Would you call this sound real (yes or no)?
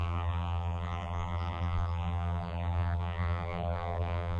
no